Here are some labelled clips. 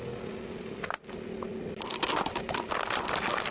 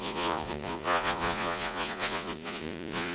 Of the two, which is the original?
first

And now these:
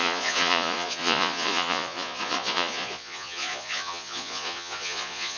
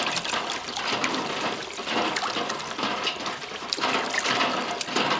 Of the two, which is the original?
second